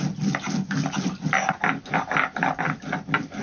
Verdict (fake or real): real